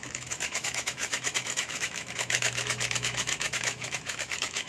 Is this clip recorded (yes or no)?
no